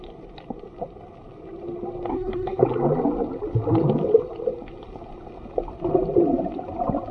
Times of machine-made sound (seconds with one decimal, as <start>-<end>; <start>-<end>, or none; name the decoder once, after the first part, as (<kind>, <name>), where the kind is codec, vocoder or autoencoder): 2.1-2.6 (codec, SNAC)